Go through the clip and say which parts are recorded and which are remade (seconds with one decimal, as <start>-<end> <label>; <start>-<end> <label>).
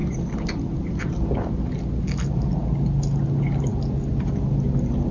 0.0-5.1 recorded